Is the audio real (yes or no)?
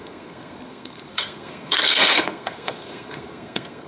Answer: no